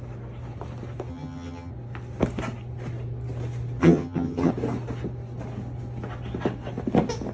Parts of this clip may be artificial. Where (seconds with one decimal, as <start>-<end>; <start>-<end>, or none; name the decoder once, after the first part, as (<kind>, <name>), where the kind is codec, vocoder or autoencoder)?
1.1-1.7 (vocoder, HiFi-GAN); 3.8-4.5